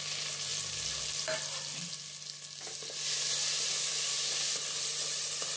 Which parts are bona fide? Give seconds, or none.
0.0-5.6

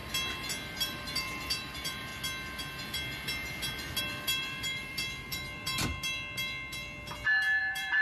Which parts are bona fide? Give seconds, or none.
0.0-0.8; 2.1-4.0; 5.9-7.6

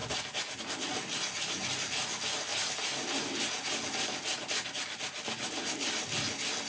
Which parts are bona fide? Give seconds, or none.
0.0-2.5; 3.2-6.7

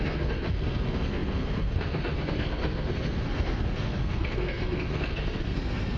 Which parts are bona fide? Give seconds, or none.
none

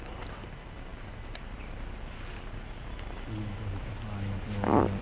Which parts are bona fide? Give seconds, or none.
0.0-5.0

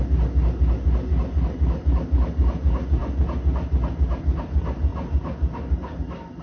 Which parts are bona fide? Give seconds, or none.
0.0-6.4

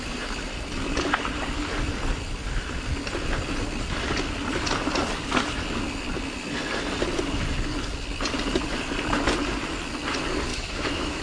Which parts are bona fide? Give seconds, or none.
0.0-10.5